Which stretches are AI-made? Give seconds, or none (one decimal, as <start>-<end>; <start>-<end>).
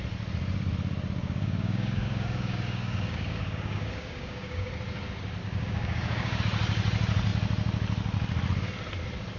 1.2-4.7; 5.4-6.4